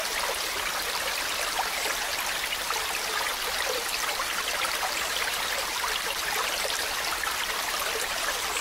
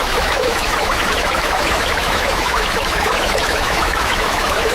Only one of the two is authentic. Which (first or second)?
first